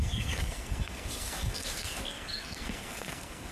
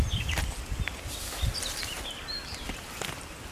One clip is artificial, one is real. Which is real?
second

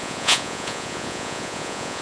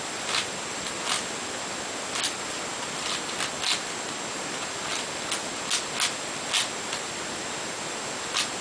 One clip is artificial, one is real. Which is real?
second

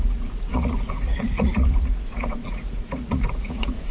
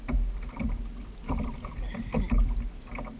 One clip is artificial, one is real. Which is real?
second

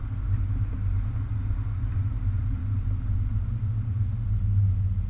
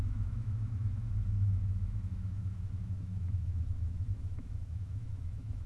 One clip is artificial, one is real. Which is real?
first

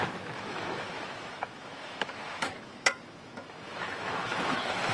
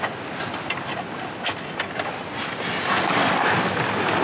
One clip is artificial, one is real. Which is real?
second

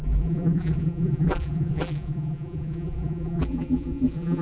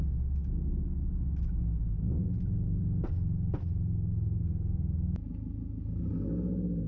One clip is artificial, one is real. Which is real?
second